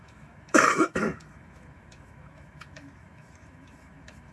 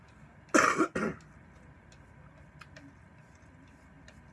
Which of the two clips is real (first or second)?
second